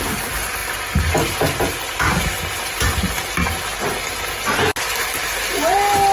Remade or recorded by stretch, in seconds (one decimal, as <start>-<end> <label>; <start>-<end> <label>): 0.0-6.1 recorded